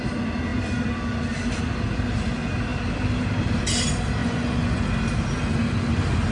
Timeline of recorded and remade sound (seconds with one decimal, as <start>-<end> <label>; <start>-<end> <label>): 0.0-4.2 recorded; 4.2-4.8 remade; 4.8-6.3 recorded